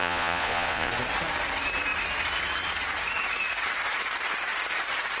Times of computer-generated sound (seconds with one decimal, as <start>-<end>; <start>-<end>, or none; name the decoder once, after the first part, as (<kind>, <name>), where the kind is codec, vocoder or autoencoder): 0.0-0.9 (vocoder, Vocos)

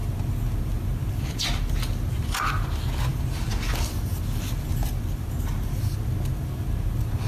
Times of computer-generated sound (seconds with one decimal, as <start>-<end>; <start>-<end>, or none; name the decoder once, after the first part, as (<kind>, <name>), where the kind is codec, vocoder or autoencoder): none

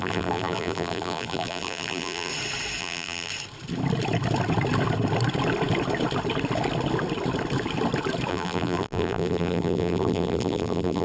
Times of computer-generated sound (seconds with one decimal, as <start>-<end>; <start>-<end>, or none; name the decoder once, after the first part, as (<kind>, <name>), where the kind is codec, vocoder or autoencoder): 0.0-2.3 (vocoder, BigVGAN v2); 2.8-3.3; 8.3-11.0